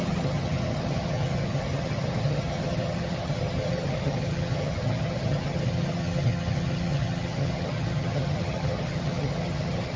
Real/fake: fake